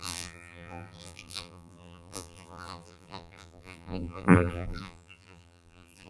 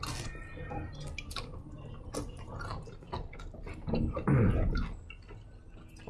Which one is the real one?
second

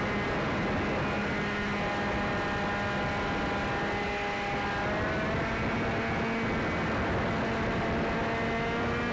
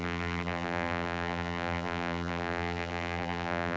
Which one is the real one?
first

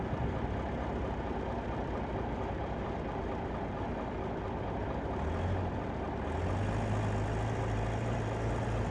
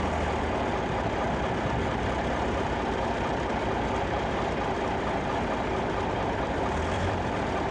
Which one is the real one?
first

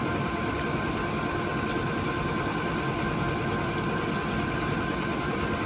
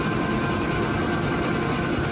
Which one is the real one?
second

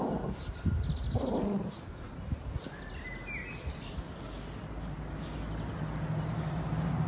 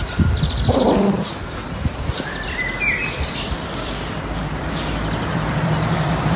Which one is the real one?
first